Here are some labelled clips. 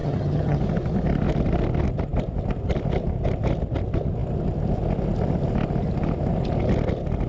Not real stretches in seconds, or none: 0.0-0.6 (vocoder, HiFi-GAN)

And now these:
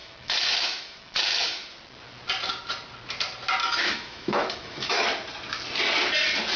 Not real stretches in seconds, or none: 0.0-1.8 (autoencoder, DAC-VAE); 3.6-5.0

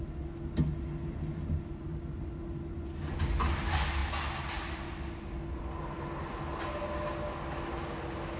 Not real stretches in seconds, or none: none